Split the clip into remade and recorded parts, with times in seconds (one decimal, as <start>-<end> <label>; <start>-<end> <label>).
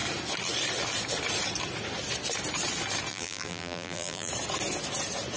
0.0-3.1 recorded; 3.1-4.3 remade; 4.3-5.4 recorded